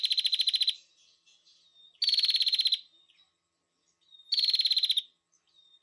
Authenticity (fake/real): real